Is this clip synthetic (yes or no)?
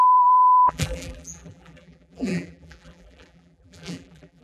yes